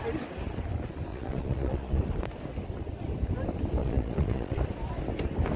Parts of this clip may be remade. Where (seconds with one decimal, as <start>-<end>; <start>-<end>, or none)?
1.1-2.0; 3.8-4.6